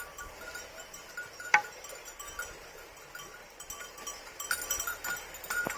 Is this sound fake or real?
real